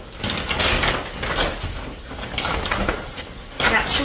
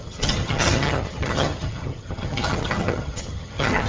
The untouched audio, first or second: first